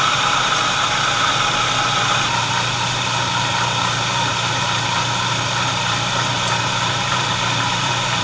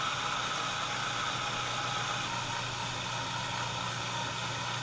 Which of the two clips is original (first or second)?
second